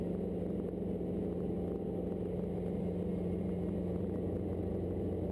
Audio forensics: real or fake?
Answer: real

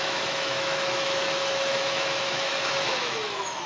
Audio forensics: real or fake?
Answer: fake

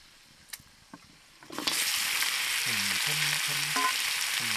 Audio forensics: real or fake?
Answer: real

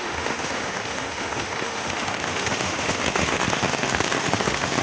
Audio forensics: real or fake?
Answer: fake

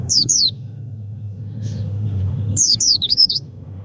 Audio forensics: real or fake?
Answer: fake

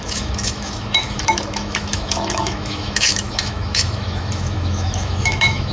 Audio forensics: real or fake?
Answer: fake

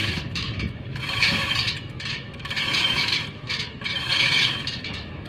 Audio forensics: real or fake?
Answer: fake